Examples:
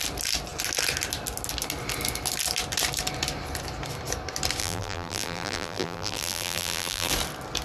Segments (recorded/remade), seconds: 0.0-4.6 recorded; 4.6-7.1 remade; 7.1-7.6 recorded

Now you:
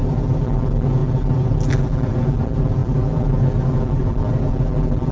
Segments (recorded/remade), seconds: 0.0-5.1 recorded

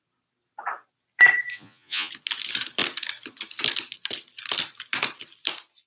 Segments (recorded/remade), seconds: 0.0-1.5 recorded; 1.5-2.1 remade; 2.1-5.9 recorded